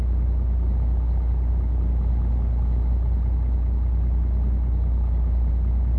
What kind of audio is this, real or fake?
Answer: real